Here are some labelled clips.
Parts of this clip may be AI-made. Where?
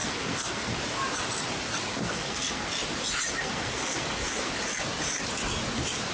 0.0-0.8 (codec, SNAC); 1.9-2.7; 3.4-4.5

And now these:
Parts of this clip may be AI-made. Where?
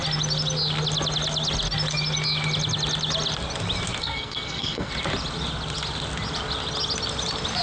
4.0-4.9 (codec, SNAC)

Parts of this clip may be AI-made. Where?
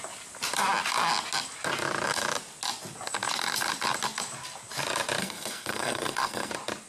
5.2-6.5 (codec, SNAC)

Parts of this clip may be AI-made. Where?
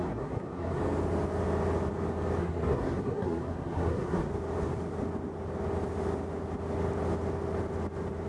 0.0-0.8 (codec, SNAC); 2.4-4.3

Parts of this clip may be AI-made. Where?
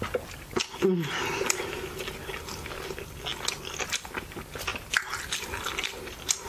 none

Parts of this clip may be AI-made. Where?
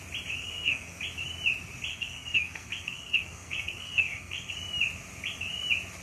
0.4-1.0 (codec, SNAC); 1.9-4.5